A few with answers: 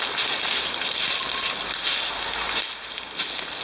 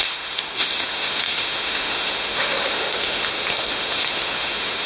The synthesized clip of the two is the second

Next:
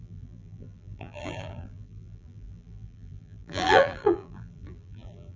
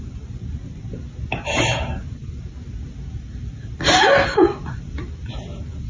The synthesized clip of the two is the first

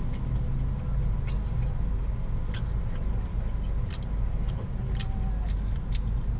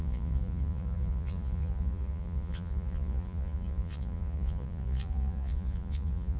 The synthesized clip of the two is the second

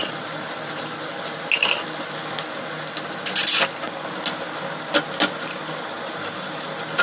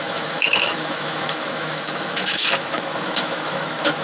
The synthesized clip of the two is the second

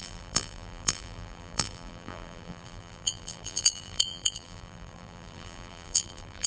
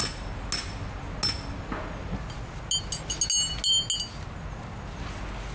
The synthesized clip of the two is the first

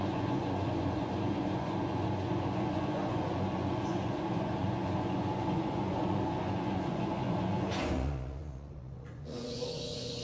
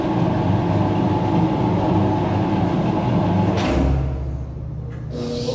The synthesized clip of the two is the first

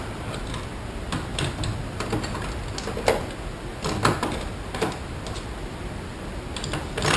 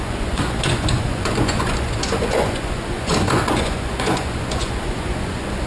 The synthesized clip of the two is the second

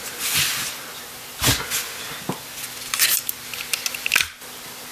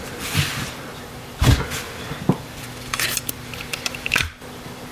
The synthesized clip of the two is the second